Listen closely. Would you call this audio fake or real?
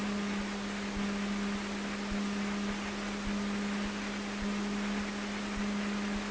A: real